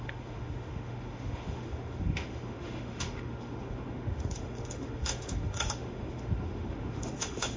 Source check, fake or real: fake